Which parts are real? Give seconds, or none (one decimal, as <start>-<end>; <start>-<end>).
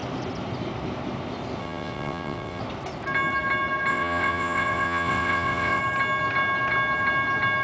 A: 0.0-1.6; 2.6-3.9; 5.8-7.6